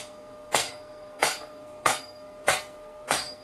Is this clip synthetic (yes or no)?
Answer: yes